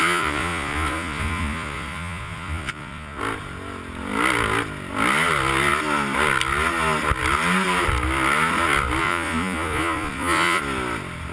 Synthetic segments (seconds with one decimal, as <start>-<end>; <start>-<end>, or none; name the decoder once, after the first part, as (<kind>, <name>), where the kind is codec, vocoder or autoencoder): 0.0-3.2 (vocoder, Vocos); 9.0-10.6